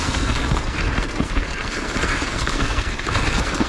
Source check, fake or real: fake